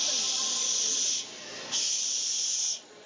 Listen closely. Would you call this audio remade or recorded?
recorded